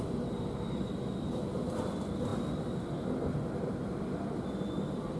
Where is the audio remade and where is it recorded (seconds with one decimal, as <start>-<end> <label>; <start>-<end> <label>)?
0.0-5.2 recorded